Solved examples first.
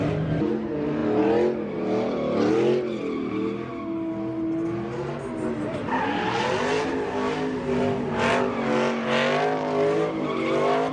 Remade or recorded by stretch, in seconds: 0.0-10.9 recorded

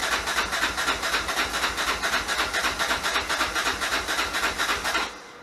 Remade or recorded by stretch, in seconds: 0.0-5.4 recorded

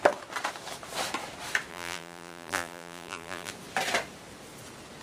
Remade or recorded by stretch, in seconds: 0.0-1.7 recorded; 1.7-3.5 remade; 3.5-5.0 recorded